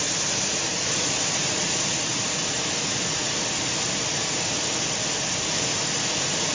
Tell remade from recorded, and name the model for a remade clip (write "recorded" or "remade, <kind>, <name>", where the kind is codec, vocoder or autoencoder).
recorded